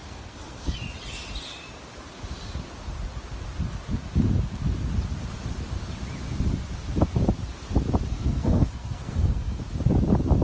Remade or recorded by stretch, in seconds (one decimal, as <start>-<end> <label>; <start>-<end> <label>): 0.0-0.7 remade; 0.7-8.1 recorded; 8.1-9.6 remade; 9.6-10.4 recorded